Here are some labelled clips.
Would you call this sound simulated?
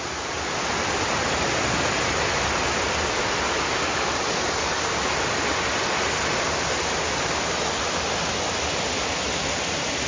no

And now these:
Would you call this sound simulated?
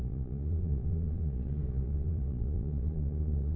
yes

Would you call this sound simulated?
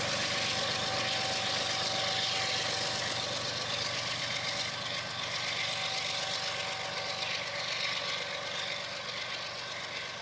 no